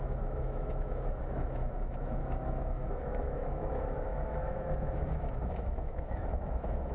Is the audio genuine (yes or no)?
no